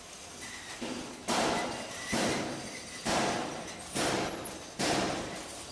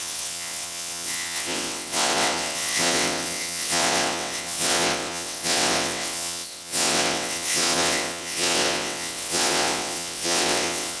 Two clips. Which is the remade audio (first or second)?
second